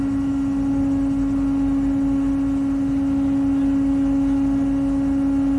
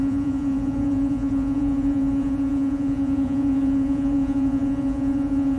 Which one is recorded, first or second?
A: first